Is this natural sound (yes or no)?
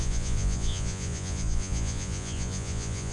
no